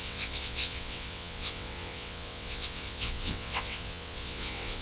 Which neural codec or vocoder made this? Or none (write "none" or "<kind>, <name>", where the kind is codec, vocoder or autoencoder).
vocoder, WaveNeXt